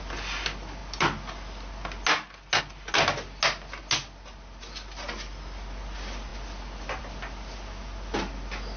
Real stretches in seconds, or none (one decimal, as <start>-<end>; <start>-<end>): 0.0-8.8